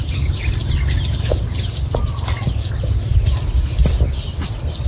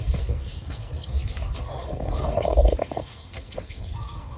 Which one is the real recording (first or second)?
first